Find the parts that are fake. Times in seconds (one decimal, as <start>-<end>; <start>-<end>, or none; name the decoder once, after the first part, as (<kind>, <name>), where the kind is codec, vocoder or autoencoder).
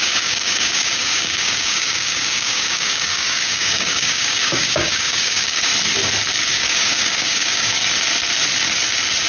0.0-5.7 (codec, DAC); 6.5-7.8